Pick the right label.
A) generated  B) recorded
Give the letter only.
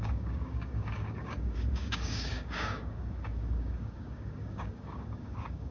A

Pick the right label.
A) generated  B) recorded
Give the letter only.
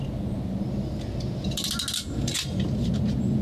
B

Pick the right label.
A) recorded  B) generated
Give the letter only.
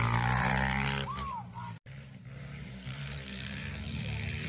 B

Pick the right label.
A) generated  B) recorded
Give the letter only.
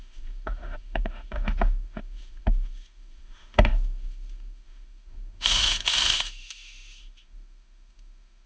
A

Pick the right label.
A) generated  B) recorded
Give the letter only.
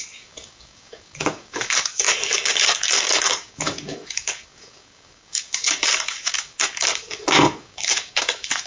A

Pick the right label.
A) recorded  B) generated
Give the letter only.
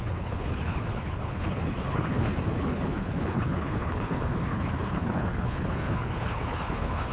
B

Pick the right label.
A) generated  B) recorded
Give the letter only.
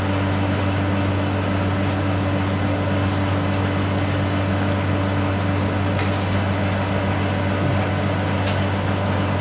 B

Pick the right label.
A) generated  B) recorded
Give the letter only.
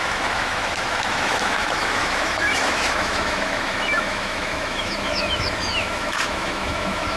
A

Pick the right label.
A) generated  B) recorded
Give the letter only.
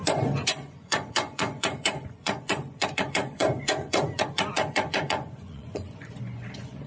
A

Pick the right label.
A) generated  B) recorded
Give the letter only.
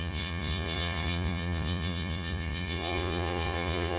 A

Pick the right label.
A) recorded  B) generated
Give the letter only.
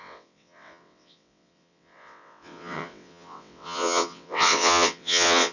B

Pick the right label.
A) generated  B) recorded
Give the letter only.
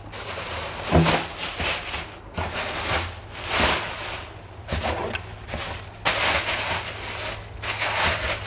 B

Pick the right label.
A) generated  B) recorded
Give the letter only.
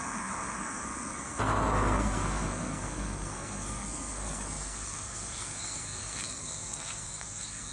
A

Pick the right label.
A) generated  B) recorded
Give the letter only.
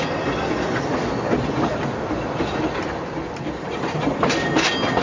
B